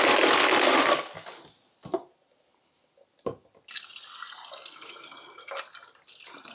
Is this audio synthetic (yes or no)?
no